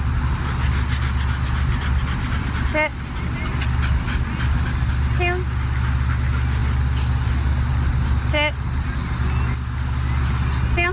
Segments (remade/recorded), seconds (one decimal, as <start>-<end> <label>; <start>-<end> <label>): 0.0-10.9 recorded